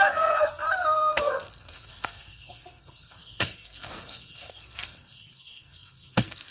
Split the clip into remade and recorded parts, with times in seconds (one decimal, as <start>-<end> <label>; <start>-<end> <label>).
0.0-6.5 remade